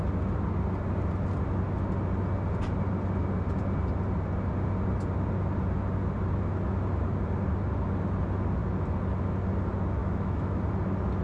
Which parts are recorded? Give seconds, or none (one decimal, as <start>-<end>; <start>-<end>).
0.0-10.0; 10.6-11.2